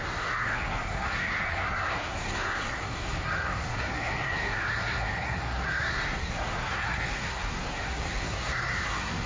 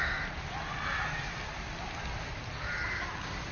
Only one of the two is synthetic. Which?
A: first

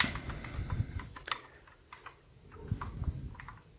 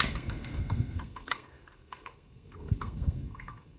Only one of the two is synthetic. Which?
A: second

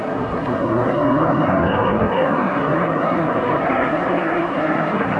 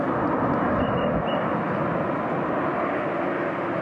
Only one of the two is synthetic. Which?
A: first